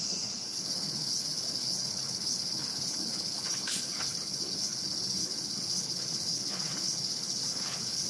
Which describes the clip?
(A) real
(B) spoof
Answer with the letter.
B